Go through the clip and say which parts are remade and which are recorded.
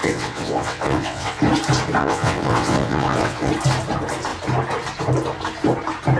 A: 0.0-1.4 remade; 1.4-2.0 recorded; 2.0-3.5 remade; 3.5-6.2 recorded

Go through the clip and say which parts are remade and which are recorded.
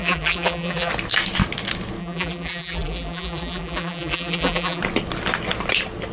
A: 0.0-0.9 remade; 0.9-2.0 recorded; 2.0-4.8 remade; 4.8-6.1 recorded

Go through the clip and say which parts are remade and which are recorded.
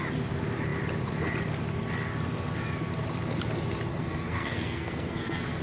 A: 0.0-3.9 recorded; 3.9-5.6 remade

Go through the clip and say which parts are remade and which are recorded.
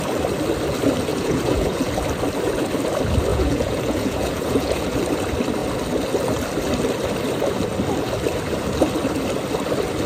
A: 0.0-1.1 recorded; 1.1-1.8 remade; 1.8-3.3 recorded; 3.3-5.0 remade; 5.0-10.1 recorded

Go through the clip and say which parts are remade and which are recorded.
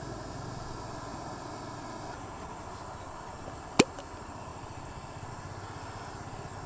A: 0.0-6.7 recorded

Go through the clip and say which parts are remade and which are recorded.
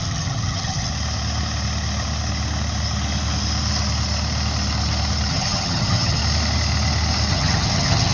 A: 0.0-0.9 remade; 0.9-5.3 recorded; 5.3-6.2 remade; 6.2-7.3 recorded; 7.3-8.1 remade